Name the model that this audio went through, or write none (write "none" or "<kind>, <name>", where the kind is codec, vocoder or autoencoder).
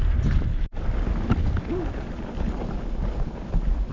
none